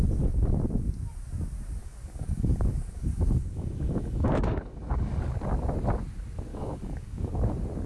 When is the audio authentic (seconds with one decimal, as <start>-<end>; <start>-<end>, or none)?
0.0-1.8; 5.2-6.5; 7.3-7.9